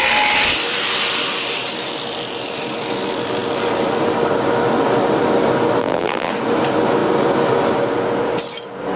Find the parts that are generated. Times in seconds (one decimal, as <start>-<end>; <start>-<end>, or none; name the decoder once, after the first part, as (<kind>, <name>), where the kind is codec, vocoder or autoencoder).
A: 5.8-6.3 (vocoder, BigVGAN v2)